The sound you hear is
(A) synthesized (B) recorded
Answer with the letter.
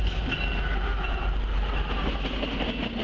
B